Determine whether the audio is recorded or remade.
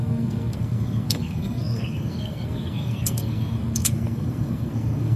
remade